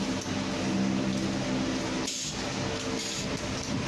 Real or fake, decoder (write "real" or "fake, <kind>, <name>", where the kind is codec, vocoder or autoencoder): real